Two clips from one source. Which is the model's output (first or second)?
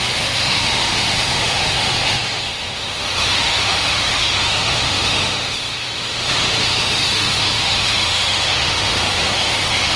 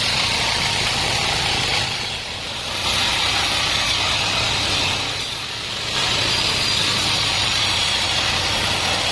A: first